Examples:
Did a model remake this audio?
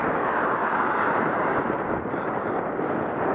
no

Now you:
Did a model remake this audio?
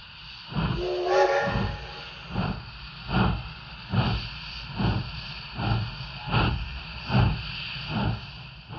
no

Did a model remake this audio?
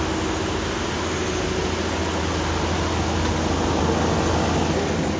no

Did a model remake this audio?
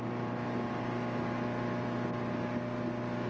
no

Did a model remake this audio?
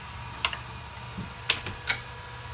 no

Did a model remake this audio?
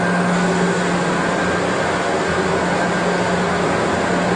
no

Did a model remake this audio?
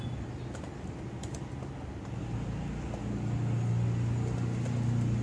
no